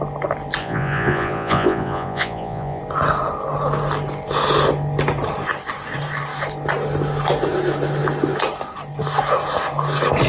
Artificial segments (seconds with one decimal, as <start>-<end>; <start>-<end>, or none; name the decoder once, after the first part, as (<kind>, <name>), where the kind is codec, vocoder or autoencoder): 0.6-2.8 (vocoder, Vocos)